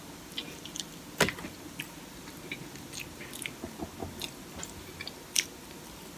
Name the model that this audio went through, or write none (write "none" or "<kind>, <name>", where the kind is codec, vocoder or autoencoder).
none